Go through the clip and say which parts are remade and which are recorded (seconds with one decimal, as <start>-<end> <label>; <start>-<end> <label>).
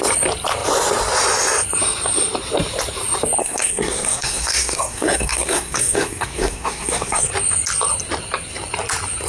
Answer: 0.0-3.4 recorded; 3.4-7.3 remade; 7.3-9.3 recorded